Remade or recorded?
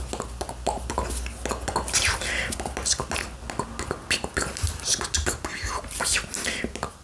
recorded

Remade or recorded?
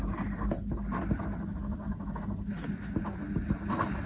recorded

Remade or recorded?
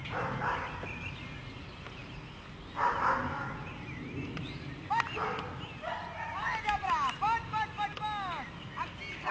recorded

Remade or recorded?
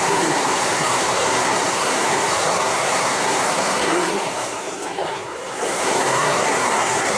remade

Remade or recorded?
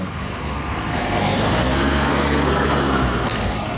remade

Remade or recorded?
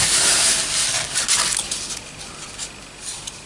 recorded